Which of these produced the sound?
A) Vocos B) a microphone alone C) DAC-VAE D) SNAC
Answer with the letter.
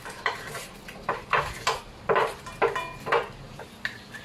B